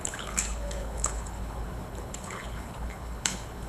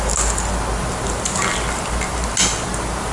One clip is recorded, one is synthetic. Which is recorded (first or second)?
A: second